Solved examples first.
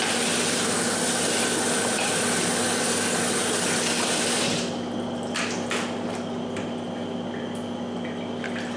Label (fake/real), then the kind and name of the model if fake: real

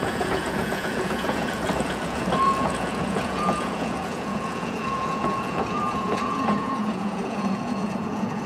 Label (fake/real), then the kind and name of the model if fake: fake, vocoder, Vocos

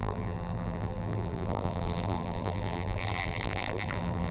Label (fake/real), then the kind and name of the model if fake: fake, vocoder, BigVGAN v2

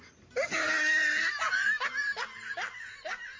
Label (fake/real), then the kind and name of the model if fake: real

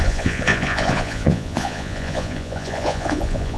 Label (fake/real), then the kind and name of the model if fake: fake, vocoder, Vocos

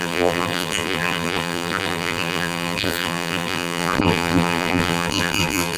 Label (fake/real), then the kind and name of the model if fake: fake, vocoder, BigVGAN v2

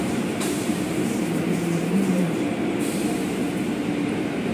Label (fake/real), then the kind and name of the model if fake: fake, vocoder, BigVGAN v2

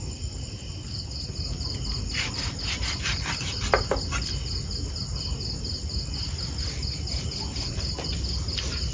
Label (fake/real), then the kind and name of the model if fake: real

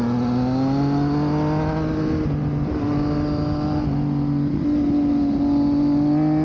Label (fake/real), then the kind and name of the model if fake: real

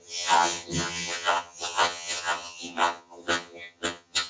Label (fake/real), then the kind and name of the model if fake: fake, vocoder, HiFi-GAN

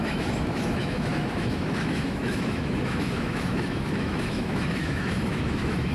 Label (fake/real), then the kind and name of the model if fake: fake, autoencoder, DAC-VAE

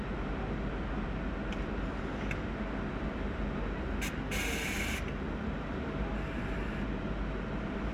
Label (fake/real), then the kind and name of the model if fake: real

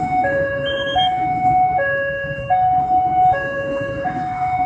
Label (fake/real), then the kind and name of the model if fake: fake, autoencoder, DAC-VAE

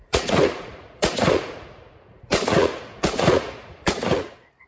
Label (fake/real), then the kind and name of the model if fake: fake, vocoder, Vocos